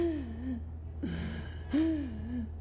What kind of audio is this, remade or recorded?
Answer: recorded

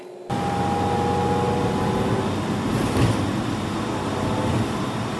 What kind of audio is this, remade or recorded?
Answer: recorded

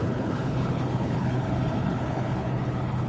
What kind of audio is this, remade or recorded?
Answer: remade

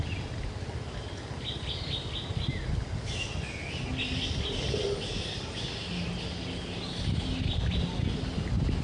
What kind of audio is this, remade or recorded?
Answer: recorded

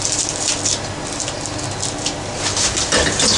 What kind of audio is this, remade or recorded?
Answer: recorded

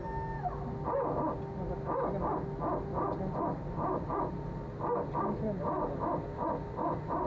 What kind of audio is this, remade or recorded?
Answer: recorded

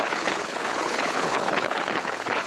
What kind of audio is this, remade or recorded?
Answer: remade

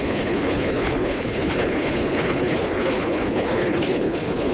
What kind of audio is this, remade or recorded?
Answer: remade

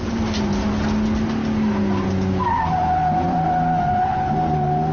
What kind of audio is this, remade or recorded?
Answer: recorded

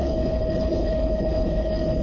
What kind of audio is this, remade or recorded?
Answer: remade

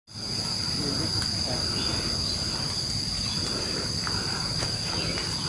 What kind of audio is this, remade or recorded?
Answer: recorded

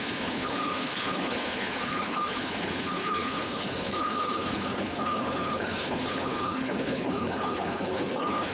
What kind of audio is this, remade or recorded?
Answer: remade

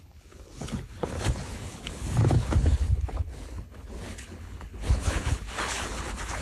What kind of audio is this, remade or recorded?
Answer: remade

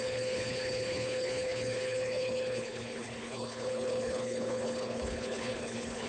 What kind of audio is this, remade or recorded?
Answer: remade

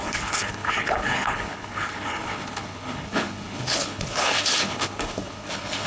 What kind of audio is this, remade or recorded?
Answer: remade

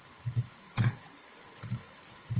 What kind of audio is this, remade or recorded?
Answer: remade